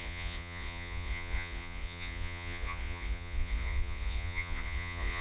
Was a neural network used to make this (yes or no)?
yes